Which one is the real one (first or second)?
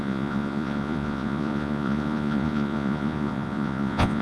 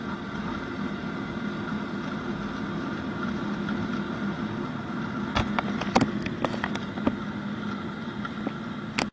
second